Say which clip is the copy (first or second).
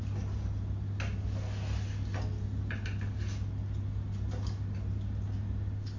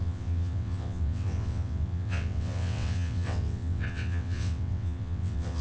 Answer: second